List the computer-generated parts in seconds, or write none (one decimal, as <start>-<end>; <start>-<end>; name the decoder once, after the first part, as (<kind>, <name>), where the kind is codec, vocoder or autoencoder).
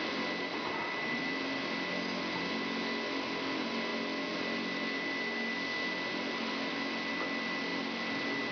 none